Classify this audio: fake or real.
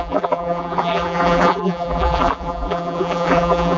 fake